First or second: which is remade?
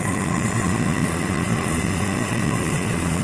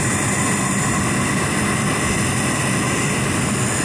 first